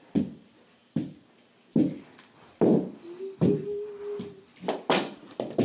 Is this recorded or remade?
recorded